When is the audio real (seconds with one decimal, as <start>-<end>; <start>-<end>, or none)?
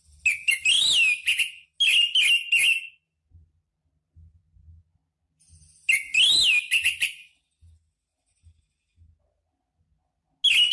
0.0-10.7